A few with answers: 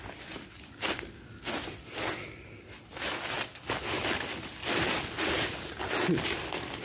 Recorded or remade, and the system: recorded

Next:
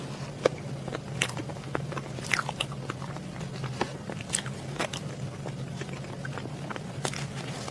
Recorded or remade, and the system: recorded